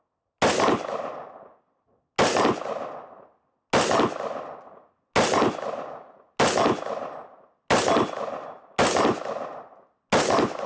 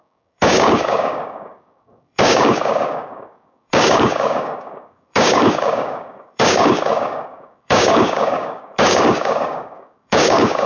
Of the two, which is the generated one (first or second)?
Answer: second